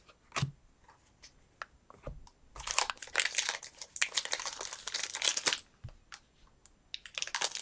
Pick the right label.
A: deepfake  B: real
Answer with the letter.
B